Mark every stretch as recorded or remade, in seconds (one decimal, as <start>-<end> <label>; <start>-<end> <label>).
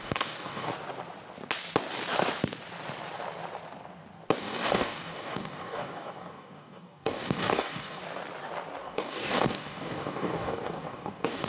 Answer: 0.0-0.7 remade; 0.7-4.4 recorded; 4.4-8.0 remade; 8.0-8.8 recorded; 8.8-11.5 remade